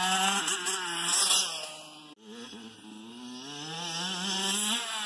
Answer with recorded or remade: recorded